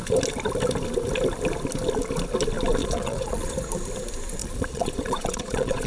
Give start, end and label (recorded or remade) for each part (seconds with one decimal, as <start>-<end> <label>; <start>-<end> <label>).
0.0-2.8 recorded; 2.8-3.7 remade; 3.7-4.4 recorded; 4.4-5.9 remade